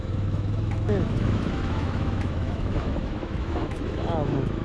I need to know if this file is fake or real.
fake